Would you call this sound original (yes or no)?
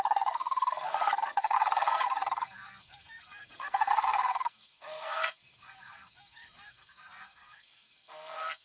no